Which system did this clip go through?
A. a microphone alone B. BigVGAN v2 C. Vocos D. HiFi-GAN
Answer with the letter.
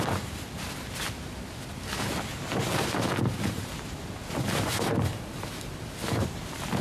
B